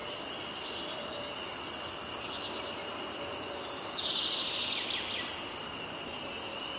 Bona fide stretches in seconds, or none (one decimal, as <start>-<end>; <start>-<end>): 0.0-6.8